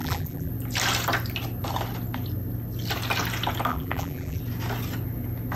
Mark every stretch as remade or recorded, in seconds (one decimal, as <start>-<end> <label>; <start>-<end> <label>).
0.0-0.5 remade; 0.5-3.7 recorded; 3.7-4.4 remade; 4.4-5.6 recorded